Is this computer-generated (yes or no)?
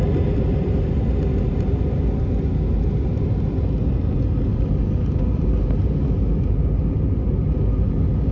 no